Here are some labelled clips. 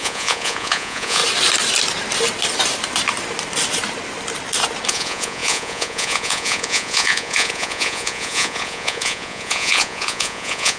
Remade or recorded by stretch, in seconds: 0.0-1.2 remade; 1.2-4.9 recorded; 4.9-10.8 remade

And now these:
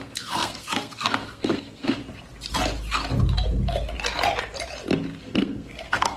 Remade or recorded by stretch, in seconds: 0.0-2.0 remade; 2.0-5.2 recorded; 5.2-6.2 remade

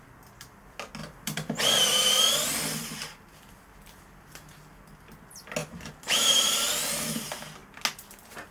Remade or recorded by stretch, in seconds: 0.0-1.0 recorded; 1.0-1.6 remade; 1.6-5.6 recorded; 5.6-6.3 remade; 6.3-8.5 recorded

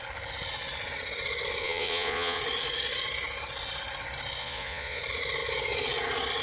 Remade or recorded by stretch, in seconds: 0.0-1.6 recorded; 1.6-2.4 remade; 2.4-4.4 recorded; 4.4-5.0 remade; 5.0-6.4 recorded

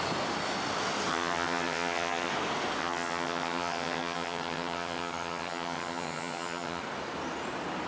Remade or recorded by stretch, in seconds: 0.0-1.1 recorded; 1.1-2.3 remade; 2.3-2.8 recorded; 2.8-6.8 remade; 6.8-7.9 recorded

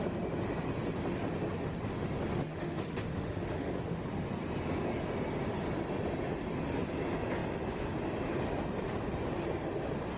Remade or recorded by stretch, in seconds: 0.0-2.5 recorded; 2.5-3.7 remade; 3.7-10.2 recorded

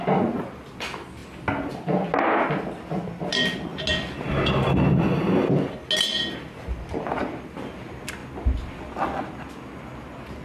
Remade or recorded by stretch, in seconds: 0.0-10.4 recorded

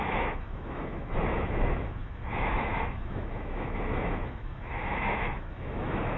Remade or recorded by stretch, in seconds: 0.0-6.2 remade